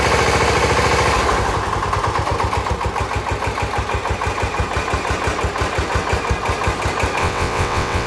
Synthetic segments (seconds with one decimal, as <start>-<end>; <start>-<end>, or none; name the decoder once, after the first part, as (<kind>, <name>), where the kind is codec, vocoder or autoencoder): 7.2-8.1 (vocoder, WaveNeXt)